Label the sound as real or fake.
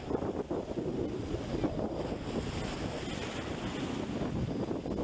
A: real